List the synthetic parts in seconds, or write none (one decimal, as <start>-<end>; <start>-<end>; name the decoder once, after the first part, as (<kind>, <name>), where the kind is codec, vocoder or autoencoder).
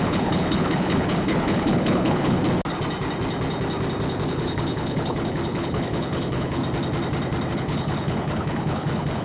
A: 0.0-2.4 (codec, HILCodec); 4.3-6.6; 7.5-9.2